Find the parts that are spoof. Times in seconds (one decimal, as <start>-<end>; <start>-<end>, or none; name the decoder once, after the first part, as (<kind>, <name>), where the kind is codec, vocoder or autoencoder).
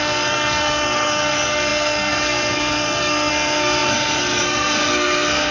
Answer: 0.0-5.5 (codec, SNAC)